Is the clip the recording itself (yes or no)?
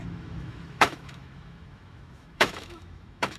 no